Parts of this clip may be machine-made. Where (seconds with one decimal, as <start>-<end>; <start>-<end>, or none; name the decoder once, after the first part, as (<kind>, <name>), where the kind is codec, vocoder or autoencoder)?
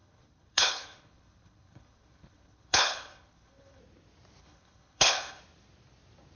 0.0-3.8 (codec, HILCodec); 4.4-5.4